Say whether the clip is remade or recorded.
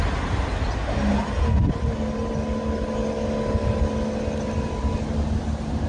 recorded